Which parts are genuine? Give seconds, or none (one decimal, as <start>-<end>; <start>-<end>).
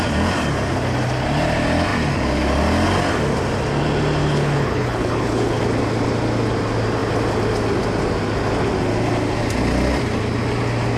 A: 0.0-4.2; 5.6-11.0